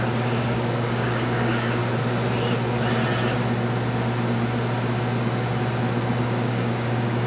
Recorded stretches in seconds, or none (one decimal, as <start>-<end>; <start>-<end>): 1.8-6.2